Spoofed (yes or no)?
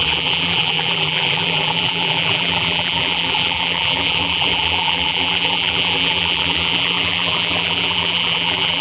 yes